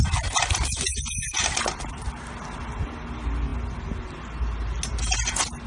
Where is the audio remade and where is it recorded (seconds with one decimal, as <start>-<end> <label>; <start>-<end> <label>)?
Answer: 0.0-5.7 recorded